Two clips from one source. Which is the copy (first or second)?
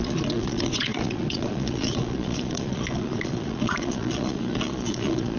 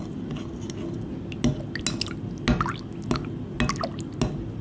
first